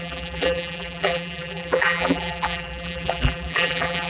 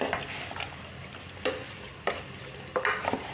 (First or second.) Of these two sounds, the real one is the second